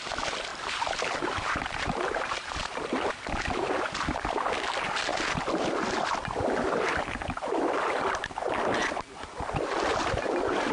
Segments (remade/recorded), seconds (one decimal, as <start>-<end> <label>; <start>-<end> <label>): 0.0-0.5 recorded; 0.5-3.1 remade; 3.1-10.7 recorded